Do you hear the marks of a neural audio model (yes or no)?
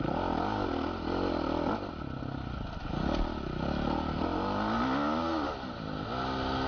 no